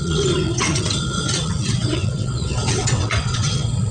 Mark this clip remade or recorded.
remade